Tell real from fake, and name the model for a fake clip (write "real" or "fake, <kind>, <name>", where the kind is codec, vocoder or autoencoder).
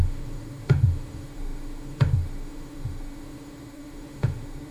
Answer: fake, autoencoder, DAC-VAE